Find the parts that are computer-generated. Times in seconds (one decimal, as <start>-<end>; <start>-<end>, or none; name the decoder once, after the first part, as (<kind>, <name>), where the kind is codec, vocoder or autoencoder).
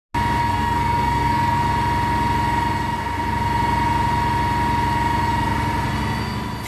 0.4-1.6 (codec, SNAC)